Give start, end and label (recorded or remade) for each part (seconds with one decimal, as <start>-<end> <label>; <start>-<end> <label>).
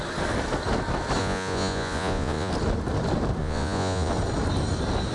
0.0-1.2 recorded; 1.2-2.5 remade; 2.5-3.4 recorded; 3.4-4.1 remade; 4.1-5.1 recorded